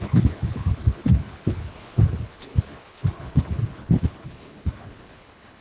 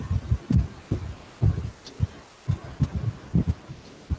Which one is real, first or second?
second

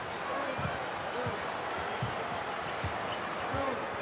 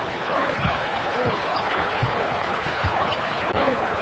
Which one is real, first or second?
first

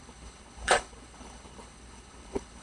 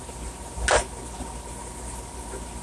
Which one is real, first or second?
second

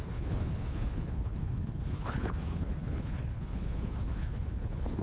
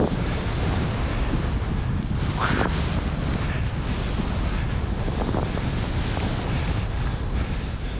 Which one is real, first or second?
second